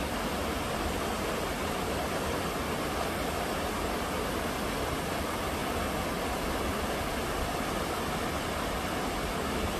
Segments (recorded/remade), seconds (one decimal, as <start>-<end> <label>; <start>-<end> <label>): 0.0-9.8 recorded